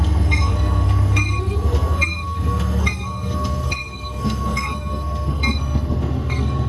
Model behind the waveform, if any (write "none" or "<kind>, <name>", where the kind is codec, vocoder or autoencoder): codec, SNAC